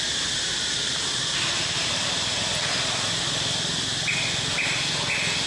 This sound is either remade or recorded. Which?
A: recorded